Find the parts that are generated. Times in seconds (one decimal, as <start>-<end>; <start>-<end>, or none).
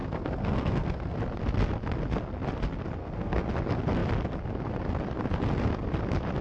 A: 0.0-1.2; 3.0-3.5